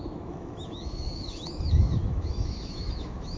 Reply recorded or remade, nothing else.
remade